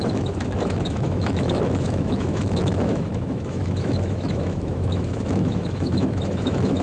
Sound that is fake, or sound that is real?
fake